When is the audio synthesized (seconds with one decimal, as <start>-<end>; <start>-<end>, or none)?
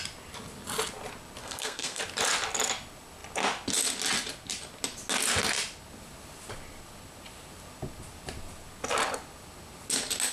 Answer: 1.4-2.0